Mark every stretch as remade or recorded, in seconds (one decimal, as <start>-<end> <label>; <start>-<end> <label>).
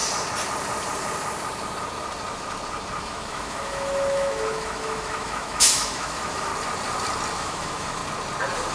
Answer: 0.0-3.0 recorded; 3.0-6.5 remade; 6.5-7.3 recorded; 7.3-8.0 remade; 8.0-8.7 recorded